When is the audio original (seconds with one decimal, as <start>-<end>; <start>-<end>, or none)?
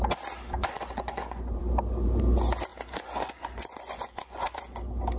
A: 0.0-0.6; 1.6-2.7; 4.7-5.2